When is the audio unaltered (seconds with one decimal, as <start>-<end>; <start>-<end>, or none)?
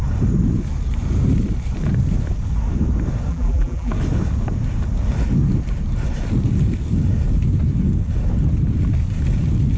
0.0-3.3; 3.9-9.8